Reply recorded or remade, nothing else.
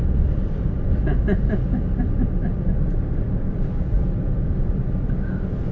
recorded